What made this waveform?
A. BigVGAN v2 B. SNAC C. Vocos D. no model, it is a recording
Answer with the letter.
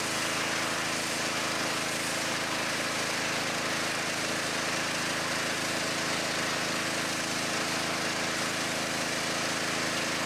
D